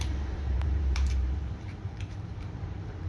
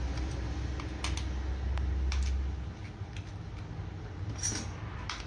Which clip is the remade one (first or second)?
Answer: first